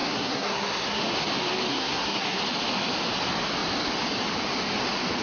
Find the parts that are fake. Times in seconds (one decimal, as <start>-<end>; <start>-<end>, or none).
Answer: 0.0-1.0; 1.7-2.4